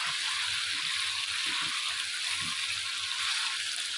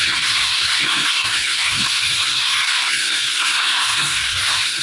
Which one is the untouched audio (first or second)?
first